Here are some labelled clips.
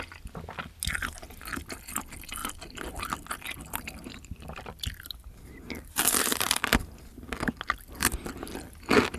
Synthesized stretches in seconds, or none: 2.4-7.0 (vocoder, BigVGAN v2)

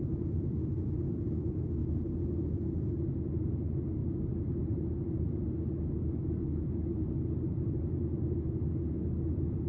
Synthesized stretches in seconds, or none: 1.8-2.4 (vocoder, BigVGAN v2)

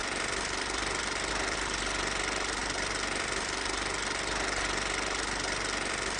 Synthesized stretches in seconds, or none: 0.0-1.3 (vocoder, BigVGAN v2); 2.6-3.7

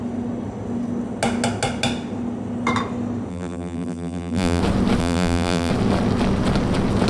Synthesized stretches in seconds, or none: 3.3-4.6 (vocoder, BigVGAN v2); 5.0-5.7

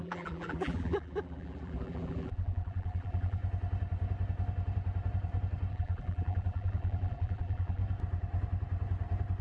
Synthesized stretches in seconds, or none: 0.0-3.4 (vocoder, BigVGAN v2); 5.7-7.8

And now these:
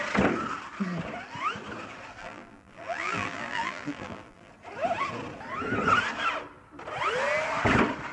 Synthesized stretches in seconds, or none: 2.2-4.5 (vocoder, BigVGAN v2)